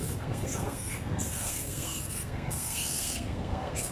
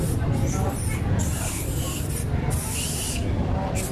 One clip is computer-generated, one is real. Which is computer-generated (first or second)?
first